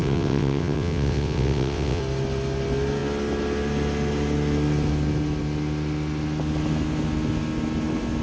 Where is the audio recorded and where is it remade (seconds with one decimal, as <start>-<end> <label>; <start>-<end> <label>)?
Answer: 0.0-2.0 remade; 2.0-8.2 recorded